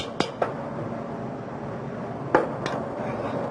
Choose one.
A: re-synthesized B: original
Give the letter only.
B